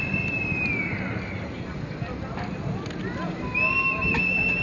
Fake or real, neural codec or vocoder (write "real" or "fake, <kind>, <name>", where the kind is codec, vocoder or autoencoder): real